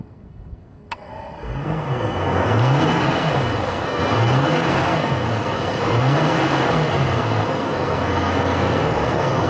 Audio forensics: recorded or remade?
remade